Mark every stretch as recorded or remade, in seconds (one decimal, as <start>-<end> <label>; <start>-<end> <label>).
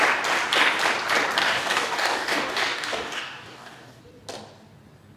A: 0.0-1.4 recorded; 1.4-4.0 remade; 4.0-5.2 recorded